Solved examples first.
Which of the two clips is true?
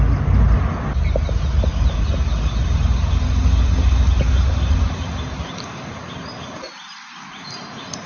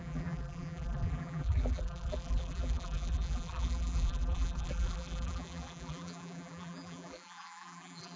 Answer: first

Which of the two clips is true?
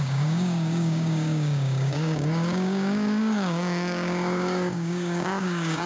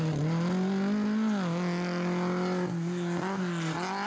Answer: second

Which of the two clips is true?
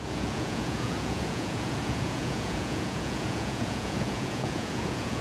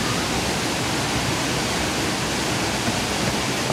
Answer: second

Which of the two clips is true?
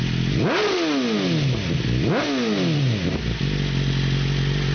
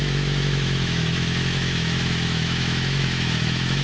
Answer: first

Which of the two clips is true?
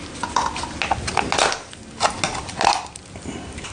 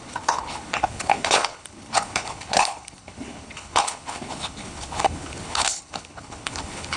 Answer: first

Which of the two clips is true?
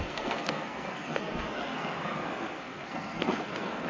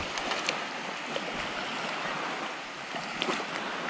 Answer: second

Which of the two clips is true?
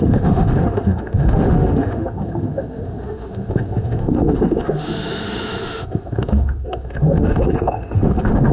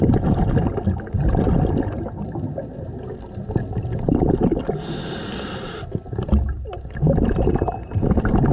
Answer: second